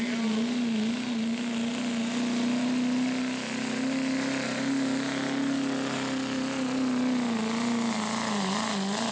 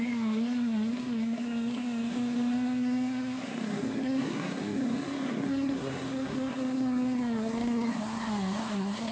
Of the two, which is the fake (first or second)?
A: second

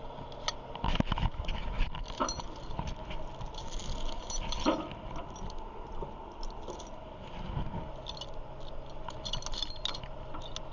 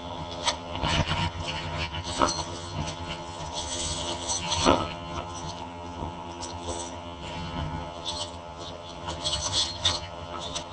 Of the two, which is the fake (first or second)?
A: second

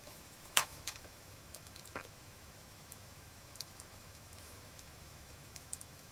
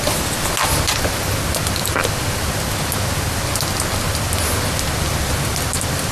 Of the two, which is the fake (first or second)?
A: first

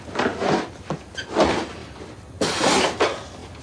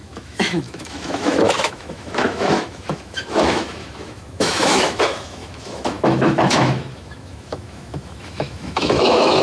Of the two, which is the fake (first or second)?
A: second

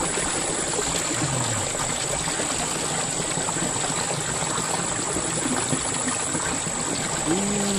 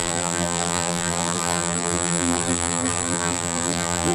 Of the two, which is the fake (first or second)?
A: second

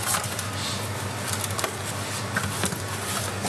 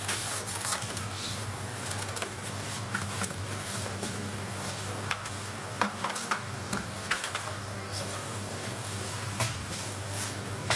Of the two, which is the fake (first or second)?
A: second